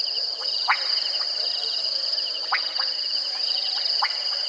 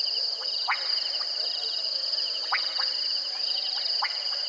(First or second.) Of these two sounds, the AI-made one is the first